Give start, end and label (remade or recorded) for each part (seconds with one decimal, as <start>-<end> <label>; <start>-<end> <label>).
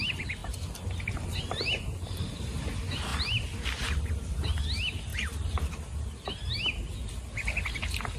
0.0-8.2 recorded